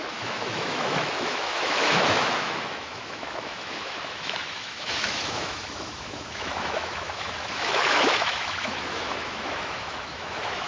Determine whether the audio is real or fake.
fake